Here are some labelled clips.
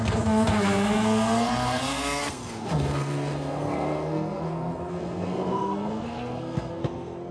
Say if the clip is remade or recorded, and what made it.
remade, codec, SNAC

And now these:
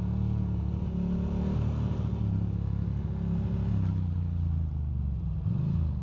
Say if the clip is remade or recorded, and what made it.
recorded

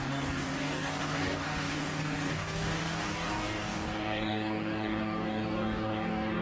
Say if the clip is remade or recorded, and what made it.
remade, codec, DAC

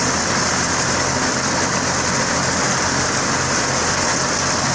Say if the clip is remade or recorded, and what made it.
recorded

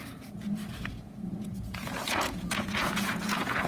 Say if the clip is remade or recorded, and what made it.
remade, vocoder, Vocos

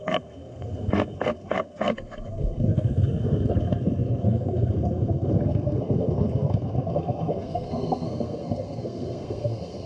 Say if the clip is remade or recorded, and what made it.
remade, codec, SNAC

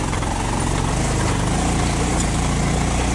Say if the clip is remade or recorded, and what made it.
recorded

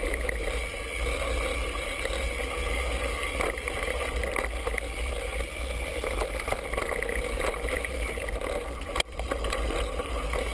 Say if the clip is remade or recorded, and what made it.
recorded